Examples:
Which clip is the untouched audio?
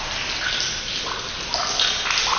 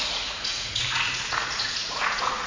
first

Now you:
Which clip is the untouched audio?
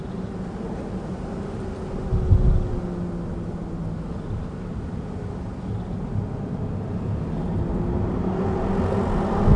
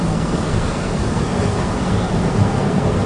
first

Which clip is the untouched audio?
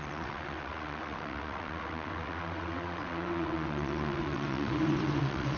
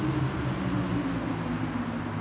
second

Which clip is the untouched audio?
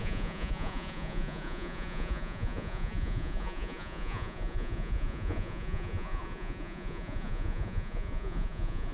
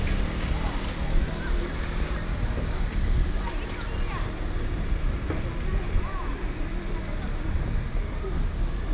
second